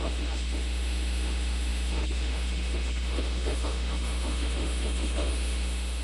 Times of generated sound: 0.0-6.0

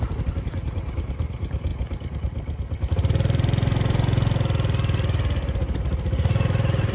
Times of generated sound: 0.0-1.7; 5.8-6.9

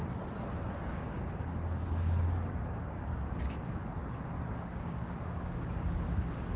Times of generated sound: 0.9-3.8; 4.5-6.6

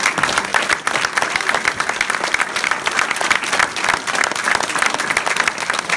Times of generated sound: none

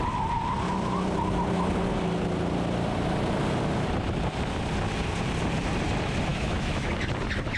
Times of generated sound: 6.3-6.9

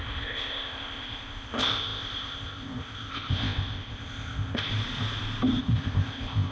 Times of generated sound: 0.0-4.7; 5.6-6.5

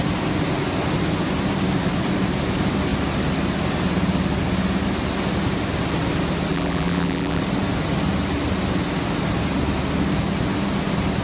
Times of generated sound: 6.5-7.4